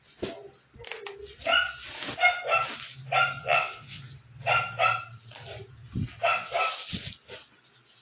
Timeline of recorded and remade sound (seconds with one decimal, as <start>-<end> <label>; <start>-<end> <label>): 0.0-3.4 recorded; 3.4-4.0 remade; 4.0-8.0 recorded